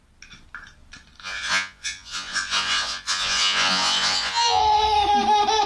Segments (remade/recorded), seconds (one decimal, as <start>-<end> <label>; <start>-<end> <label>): 0.0-1.2 recorded; 1.2-4.6 remade; 4.6-5.7 recorded